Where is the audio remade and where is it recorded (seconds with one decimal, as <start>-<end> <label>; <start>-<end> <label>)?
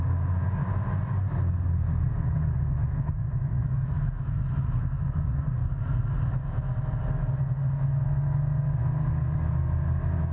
0.0-2.8 recorded; 2.8-4.4 remade; 4.4-10.3 recorded